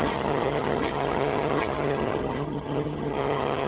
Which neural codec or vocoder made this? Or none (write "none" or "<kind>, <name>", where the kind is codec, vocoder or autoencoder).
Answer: vocoder, HiFi-GAN